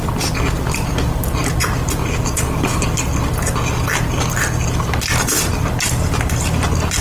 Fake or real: real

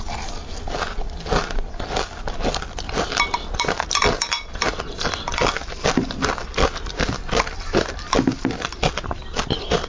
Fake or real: real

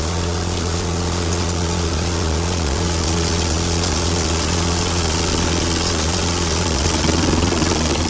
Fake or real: fake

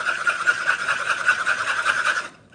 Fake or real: fake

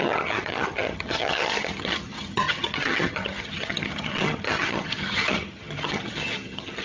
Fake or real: fake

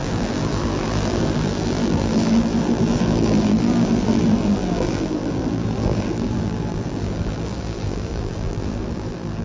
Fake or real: fake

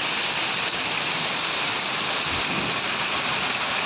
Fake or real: real